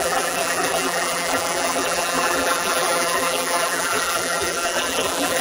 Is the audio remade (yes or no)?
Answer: yes